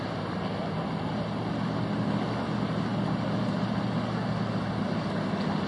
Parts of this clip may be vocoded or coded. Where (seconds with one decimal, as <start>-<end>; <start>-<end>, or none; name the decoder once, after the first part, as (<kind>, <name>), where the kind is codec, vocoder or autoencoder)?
none